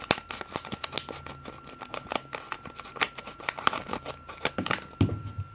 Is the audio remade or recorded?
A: recorded